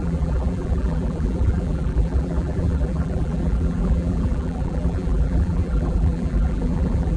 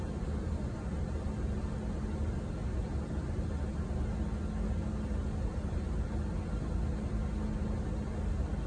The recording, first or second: second